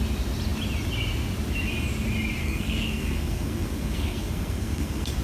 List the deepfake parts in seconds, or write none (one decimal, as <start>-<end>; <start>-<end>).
2.4-5.2